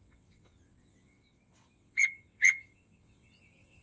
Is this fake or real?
fake